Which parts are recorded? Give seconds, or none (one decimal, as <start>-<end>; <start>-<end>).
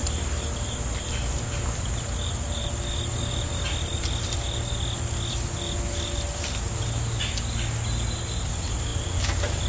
0.0-9.7